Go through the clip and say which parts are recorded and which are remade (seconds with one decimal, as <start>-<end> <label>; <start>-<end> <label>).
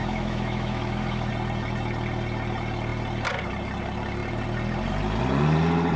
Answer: 0.0-1.3 remade; 1.3-6.0 recorded